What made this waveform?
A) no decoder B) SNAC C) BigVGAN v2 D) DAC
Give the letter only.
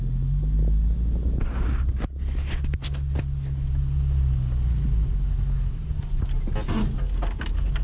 A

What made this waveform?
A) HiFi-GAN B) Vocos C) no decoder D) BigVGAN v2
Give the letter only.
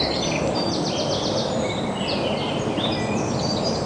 C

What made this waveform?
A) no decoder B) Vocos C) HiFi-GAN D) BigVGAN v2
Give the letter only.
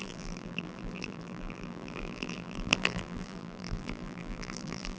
D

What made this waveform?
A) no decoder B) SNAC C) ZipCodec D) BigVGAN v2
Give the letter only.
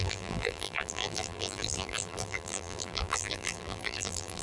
D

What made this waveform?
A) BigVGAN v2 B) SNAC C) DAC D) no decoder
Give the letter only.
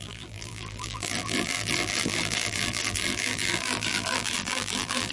A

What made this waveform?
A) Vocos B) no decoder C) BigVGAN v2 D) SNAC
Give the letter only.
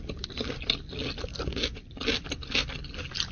B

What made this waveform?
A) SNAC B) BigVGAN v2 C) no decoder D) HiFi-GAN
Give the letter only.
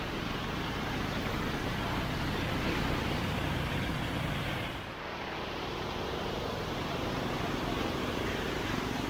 B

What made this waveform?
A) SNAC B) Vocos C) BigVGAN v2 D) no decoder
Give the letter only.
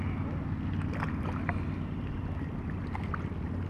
D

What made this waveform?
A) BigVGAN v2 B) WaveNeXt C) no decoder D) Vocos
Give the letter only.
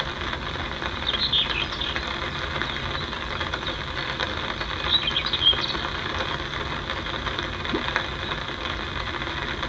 C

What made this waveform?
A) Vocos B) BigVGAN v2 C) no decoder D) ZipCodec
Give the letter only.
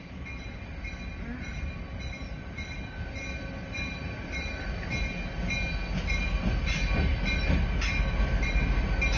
C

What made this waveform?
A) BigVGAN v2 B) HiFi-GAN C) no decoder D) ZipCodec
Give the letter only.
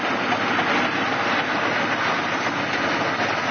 C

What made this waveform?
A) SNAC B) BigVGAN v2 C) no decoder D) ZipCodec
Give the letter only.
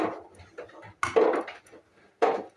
C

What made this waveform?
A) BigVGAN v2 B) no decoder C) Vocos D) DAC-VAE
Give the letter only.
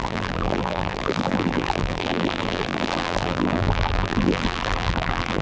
A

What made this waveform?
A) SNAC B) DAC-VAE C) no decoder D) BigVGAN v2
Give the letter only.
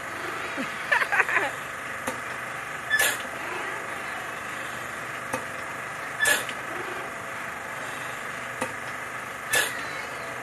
C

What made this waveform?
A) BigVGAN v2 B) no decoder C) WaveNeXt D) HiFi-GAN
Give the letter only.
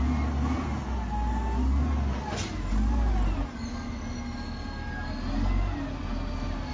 B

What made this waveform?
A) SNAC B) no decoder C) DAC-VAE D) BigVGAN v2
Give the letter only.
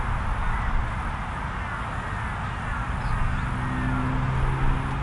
B